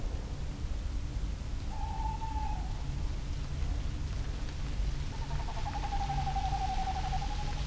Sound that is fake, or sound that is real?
real